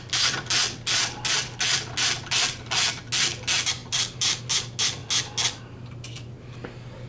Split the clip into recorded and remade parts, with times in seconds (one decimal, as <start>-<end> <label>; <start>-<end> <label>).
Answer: 0.0-7.1 recorded